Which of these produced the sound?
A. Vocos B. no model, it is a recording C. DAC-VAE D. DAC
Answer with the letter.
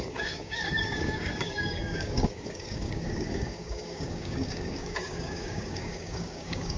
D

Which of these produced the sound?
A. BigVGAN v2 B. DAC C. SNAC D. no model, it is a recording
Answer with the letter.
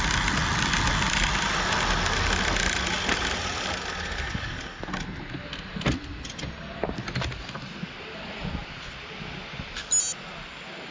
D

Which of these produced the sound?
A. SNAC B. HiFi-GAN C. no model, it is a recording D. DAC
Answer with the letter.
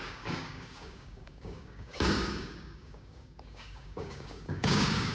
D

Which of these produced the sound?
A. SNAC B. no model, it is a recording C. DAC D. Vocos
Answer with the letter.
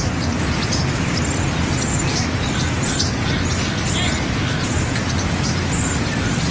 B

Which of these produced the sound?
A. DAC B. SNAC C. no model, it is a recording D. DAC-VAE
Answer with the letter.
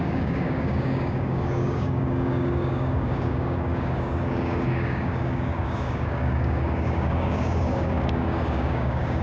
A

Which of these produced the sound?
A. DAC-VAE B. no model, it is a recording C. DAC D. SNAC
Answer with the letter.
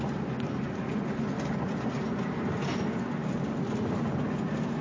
B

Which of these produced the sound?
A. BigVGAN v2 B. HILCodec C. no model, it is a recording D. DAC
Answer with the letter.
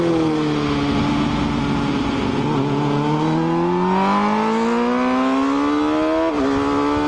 C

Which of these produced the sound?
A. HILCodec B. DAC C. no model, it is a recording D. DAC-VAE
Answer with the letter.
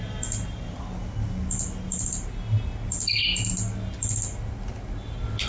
C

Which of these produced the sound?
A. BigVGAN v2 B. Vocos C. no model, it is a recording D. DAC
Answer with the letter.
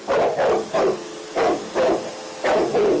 C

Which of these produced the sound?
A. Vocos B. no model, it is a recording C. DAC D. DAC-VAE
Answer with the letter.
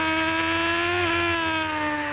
B